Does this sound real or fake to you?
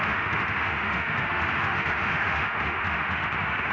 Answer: fake